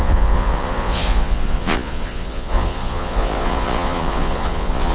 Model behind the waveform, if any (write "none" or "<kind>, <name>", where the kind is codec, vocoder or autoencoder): vocoder, Vocos